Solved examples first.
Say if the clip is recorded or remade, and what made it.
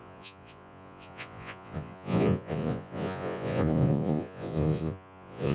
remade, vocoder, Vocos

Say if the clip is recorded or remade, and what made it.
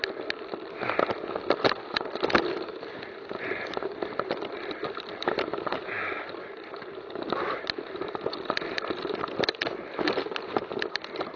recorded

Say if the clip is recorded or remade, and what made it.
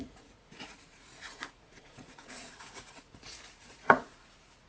remade, vocoder, Vocos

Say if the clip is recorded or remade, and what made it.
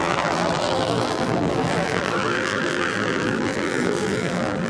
remade, vocoder, BigVGAN v2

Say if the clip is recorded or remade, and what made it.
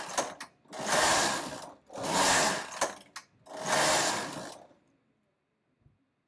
recorded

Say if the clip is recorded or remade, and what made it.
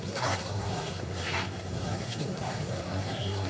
remade, codec, SNAC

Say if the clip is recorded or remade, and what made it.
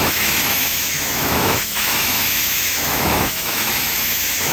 remade, autoencoder, DAC-VAE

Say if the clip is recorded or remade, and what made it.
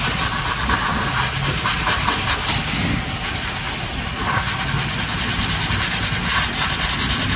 recorded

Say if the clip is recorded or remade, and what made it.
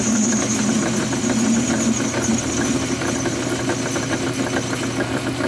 recorded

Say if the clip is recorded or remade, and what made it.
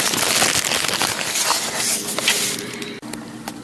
recorded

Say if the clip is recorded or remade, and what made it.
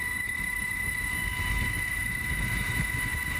remade, autoencoder, DAC-VAE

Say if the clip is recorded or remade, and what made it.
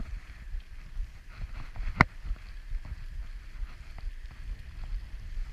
recorded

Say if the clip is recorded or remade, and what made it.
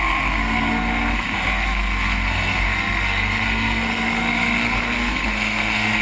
remade, codec, SNAC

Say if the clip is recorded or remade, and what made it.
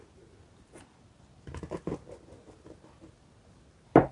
recorded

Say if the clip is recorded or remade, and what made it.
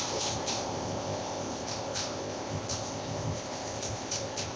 remade, codec, ZipCodec